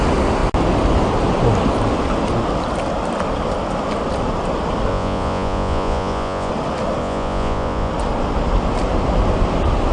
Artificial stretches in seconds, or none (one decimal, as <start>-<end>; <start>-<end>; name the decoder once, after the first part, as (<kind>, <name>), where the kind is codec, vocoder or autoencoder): 4.9-6.5 (vocoder, Vocos); 7.0-7.9